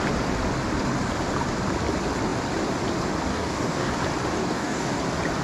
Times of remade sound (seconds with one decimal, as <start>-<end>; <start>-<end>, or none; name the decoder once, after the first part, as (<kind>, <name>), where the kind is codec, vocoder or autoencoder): 3.3-3.9 (codec, DAC); 4.4-5.0